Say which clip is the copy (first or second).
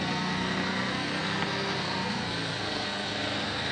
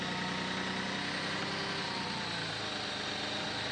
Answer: first